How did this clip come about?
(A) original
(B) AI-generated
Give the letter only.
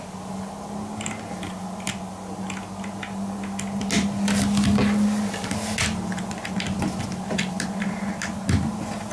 A